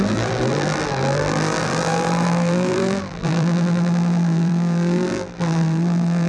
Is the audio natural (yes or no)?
no